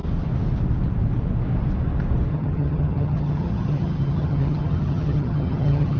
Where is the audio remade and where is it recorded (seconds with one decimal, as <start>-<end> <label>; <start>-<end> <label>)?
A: 0.0-2.3 recorded; 2.3-6.0 remade